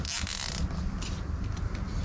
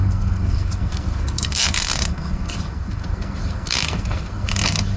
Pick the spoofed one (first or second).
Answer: second